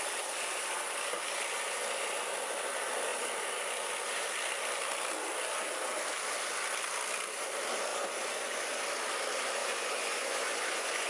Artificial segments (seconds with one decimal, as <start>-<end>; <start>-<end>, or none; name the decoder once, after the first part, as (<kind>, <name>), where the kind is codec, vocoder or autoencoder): 7.9-8.8 (vocoder, Vocos); 9.6-11.1